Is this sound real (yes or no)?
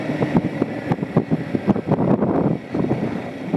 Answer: no